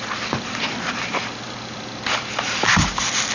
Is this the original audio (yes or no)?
yes